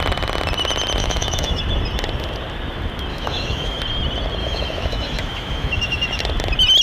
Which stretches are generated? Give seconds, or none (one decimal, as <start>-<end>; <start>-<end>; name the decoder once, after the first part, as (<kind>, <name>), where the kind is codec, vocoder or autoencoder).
1.0-1.6 (autoencoder, DAC-VAE); 3.1-3.8; 4.4-6.2